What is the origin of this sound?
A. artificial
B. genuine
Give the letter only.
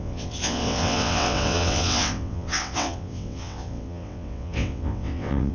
A